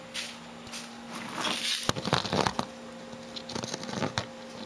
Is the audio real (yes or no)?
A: yes